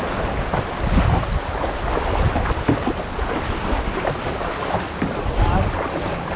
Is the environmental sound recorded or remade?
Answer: recorded